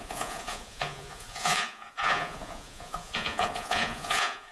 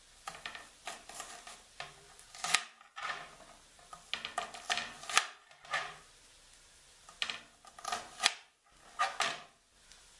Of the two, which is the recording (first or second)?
second